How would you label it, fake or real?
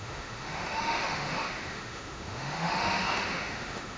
fake